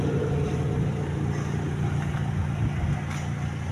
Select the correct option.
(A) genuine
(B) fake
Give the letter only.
A